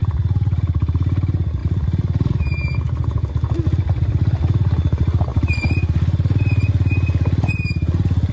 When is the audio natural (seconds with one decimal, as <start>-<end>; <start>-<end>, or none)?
0.0-8.3